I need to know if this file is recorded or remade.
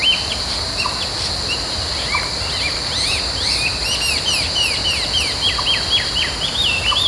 recorded